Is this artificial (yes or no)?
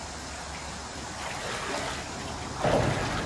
no